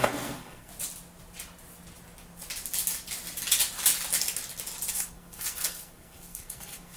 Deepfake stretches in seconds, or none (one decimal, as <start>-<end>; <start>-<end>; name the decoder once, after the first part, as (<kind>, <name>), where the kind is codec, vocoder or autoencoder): 0.0-0.7 (codec, SNAC); 4.9-7.0

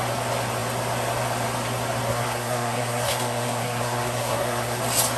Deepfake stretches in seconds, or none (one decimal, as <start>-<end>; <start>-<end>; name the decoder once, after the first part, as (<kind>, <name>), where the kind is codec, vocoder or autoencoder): 2.1-4.8 (codec, SNAC)

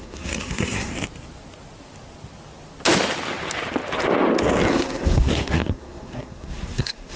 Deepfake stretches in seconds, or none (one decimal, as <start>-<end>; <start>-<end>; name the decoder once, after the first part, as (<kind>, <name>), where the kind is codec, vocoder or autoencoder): 0.0-0.9 (codec, SNAC); 4.7-7.2

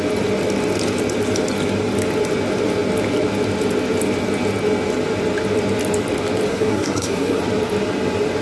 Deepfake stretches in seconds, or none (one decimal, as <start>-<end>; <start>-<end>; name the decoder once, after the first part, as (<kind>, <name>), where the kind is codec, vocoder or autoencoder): 6.5-7.4 (codec, SNAC)

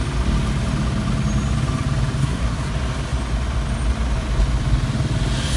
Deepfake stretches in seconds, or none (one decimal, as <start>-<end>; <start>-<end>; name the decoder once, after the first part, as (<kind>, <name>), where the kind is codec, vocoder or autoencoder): 2.2-2.7 (codec, SNAC)

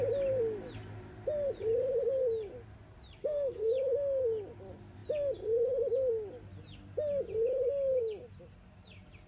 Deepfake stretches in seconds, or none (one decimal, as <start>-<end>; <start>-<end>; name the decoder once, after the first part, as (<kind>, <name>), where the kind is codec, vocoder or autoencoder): 3.2-3.7 (codec, SNAC)

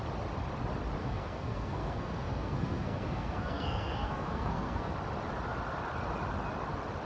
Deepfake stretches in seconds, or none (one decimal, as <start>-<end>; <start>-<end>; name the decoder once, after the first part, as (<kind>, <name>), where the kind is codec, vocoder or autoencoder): 1.0-4.9 (codec, SNAC)

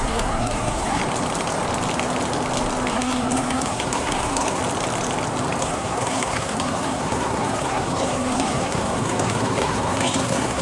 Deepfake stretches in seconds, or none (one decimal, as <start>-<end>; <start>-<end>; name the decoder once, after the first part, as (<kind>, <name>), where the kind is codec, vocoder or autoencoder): 0.0-1.0 (codec, SNAC); 2.9-4.6; 5.6-10.6